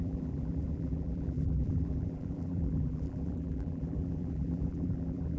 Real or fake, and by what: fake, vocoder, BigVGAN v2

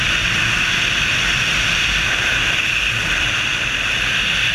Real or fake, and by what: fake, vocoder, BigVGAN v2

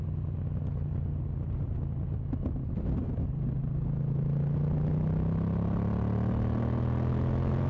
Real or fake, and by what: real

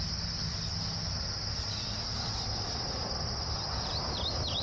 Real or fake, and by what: real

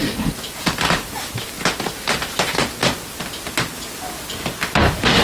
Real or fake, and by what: real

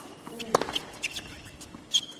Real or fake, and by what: real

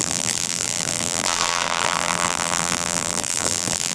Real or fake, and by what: fake, vocoder, BigVGAN v2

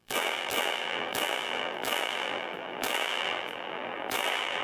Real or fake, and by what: fake, vocoder, BigVGAN v2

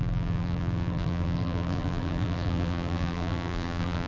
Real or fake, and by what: fake, vocoder, BigVGAN v2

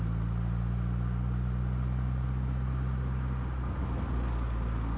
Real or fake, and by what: real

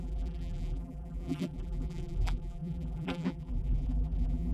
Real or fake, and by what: fake, vocoder, BigVGAN v2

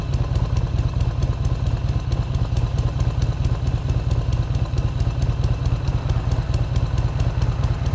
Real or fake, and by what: real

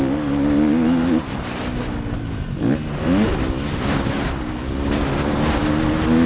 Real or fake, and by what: real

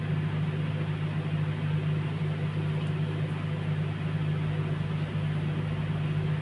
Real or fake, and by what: real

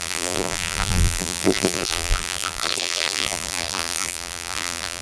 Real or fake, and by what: fake, vocoder, BigVGAN v2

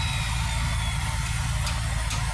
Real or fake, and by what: real